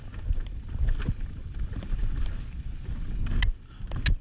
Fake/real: real